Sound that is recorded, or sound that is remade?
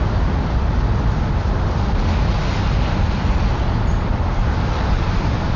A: recorded